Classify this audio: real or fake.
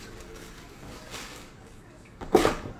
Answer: fake